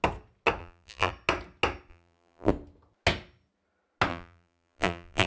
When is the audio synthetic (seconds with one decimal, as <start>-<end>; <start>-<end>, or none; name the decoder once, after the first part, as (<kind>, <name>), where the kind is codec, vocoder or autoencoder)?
0.6-1.1 (vocoder, BigVGAN v2); 1.9-2.5; 4.1-5.3